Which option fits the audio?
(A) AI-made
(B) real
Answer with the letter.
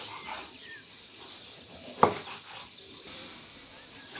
B